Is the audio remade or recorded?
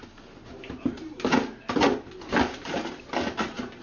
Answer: recorded